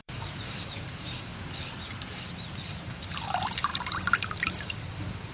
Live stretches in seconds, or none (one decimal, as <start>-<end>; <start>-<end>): 1.3-2.6